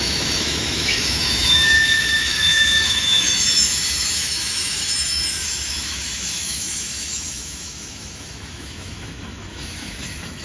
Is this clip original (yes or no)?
no